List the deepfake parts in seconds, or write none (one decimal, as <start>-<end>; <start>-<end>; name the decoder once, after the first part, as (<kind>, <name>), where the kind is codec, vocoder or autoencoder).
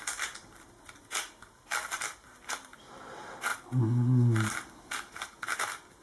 none